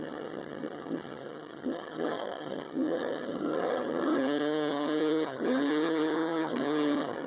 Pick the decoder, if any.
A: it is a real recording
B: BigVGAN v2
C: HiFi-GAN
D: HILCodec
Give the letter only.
C